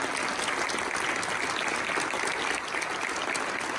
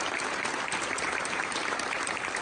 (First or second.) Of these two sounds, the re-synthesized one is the second